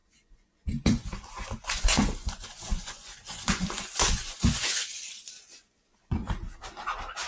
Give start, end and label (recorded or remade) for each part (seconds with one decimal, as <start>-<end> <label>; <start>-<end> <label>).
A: 0.0-6.2 remade; 6.2-7.3 recorded